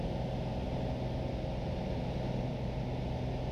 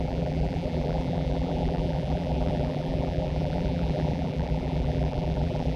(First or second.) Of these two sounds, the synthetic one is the second